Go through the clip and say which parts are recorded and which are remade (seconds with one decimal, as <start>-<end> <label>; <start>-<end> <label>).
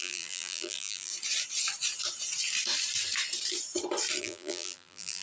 0.0-1.1 remade; 1.1-4.2 recorded; 4.2-5.2 remade